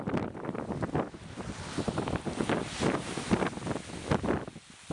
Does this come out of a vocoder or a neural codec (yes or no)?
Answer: no